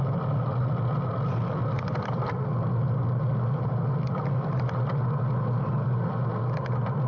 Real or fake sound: real